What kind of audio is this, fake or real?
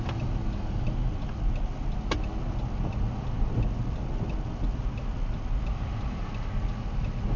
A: real